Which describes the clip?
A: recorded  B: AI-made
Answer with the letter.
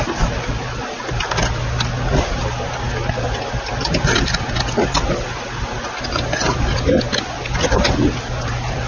A